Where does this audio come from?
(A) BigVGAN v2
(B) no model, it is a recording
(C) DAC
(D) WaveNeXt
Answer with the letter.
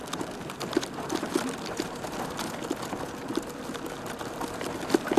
B